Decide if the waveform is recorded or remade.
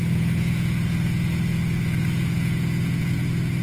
remade